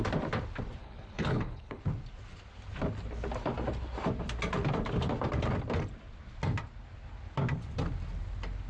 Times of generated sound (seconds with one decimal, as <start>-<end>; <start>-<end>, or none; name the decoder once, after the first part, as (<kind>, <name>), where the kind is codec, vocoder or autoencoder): 0.8-1.8 (codec, HILCodec)